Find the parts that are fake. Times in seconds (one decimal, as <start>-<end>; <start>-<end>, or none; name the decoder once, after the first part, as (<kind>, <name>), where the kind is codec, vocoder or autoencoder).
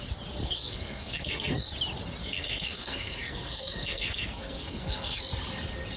0.4-1.7 (codec, SNAC); 2.2-5.2